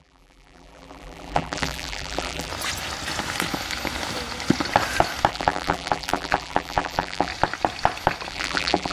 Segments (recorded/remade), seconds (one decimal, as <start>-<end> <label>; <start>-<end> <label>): 0.0-2.5 remade; 2.5-5.3 recorded; 5.3-7.3 remade; 7.3-8.3 recorded; 8.3-8.9 remade